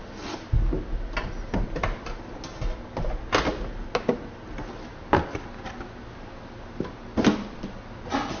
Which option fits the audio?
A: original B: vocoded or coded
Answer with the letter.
A